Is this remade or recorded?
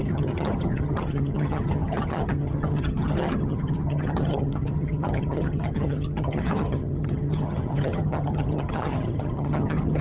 remade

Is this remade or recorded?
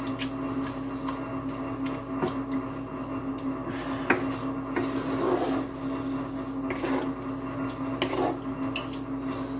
recorded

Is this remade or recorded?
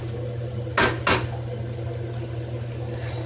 recorded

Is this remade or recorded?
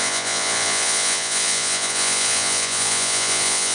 remade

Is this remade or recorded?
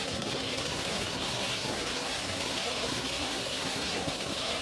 remade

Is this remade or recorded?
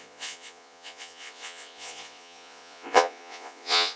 remade